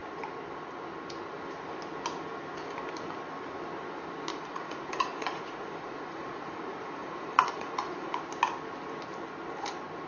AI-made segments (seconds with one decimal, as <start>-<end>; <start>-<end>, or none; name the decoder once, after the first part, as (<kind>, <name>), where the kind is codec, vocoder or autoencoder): 4.3-8.2 (vocoder, Vocos)